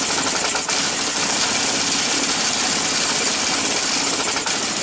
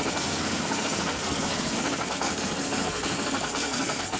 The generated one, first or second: second